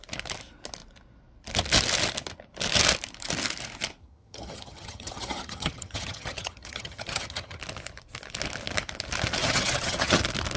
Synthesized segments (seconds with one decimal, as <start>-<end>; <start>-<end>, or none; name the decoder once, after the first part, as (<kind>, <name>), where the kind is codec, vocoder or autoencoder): 4.0-7.6 (vocoder, HiFi-GAN); 9.4-10.2

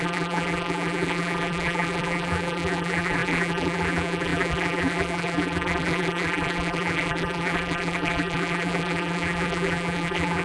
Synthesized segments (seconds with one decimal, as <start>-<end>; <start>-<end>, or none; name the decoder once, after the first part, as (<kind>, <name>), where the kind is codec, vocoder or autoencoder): 0.0-10.4 (vocoder, BigVGAN v2)

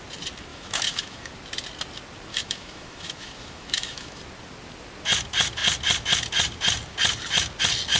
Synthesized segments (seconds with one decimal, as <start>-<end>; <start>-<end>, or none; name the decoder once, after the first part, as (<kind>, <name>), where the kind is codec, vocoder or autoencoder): 0.5-1.3 (autoencoder, DAC-VAE); 2.3-4.2

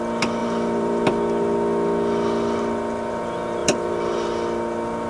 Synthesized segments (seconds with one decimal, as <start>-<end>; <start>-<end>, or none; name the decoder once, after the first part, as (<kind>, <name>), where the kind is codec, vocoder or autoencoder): 0.4-1.0 (vocoder, BigVGAN v2); 3.6-4.1

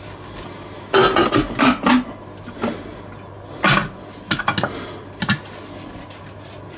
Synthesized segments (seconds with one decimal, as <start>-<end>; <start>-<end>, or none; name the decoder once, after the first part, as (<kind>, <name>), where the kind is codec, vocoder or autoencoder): none

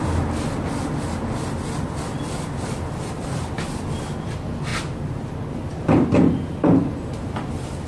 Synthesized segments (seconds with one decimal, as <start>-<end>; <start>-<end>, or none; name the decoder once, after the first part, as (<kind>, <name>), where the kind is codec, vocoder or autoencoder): none

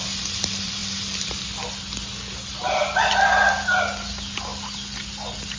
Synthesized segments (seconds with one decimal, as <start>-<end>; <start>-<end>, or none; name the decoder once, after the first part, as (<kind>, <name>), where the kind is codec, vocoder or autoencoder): none